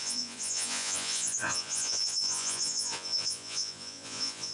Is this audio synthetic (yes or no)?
yes